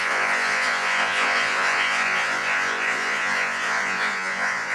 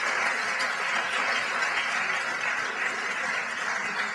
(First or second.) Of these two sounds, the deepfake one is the first